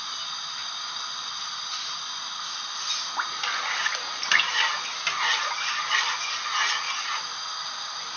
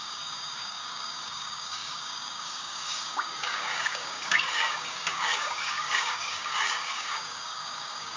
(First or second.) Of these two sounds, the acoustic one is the first